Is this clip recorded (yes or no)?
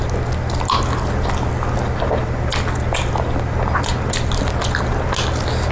yes